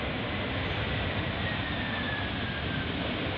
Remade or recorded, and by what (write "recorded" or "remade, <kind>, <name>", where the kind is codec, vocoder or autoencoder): recorded